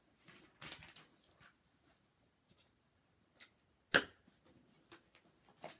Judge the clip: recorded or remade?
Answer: recorded